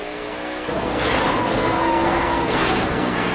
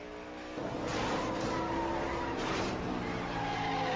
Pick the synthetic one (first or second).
first